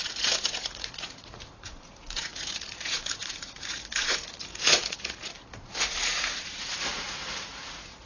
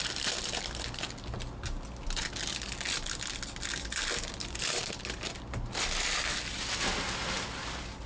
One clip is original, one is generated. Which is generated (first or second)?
first